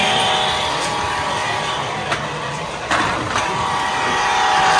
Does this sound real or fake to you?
real